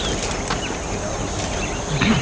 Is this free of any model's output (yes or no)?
yes